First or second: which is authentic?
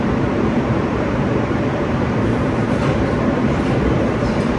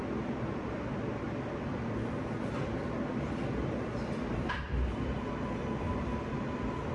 second